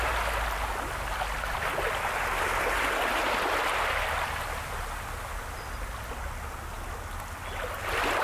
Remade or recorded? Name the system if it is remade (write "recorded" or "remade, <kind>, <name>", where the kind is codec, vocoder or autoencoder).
recorded